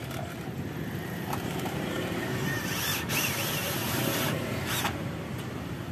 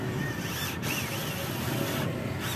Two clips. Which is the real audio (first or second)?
second